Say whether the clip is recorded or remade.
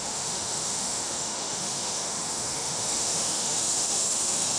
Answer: remade